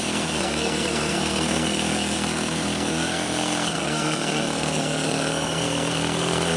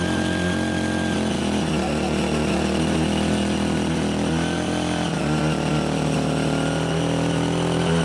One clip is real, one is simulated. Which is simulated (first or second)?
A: first